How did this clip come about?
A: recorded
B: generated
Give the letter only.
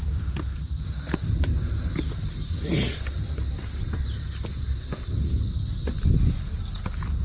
A